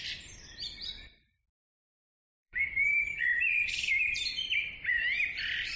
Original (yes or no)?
no